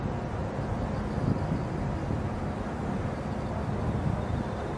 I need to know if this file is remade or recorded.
recorded